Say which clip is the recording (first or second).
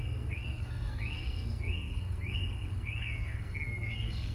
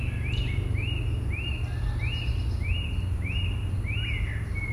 second